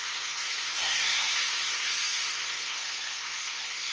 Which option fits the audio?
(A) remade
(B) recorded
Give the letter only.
A